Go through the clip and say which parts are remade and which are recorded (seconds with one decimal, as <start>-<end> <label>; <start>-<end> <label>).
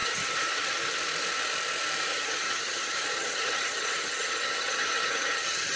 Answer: 0.0-1.0 remade; 1.0-2.1 recorded; 2.1-5.8 remade